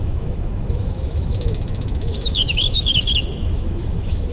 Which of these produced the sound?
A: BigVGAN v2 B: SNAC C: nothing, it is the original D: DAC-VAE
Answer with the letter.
D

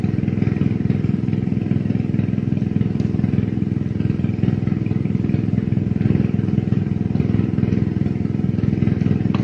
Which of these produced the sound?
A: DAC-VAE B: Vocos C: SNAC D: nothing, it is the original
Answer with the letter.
D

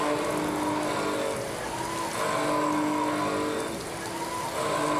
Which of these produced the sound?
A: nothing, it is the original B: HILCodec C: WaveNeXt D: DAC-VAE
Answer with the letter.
A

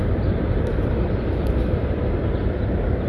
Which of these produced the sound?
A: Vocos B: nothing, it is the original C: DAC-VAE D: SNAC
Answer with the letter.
B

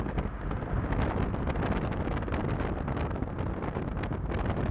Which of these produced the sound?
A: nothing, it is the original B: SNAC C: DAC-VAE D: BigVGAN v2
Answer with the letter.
A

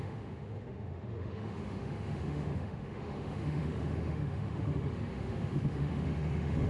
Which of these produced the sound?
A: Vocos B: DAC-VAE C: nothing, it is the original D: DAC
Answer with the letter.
B